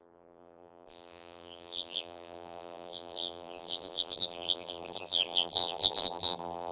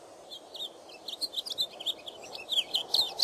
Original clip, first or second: second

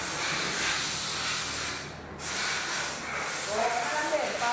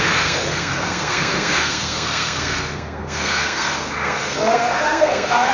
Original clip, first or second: first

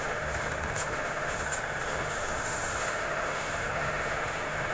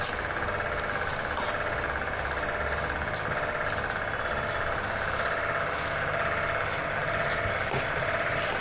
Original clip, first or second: second